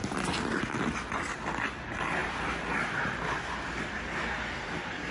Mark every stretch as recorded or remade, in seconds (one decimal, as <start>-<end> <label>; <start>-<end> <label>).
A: 0.0-5.1 recorded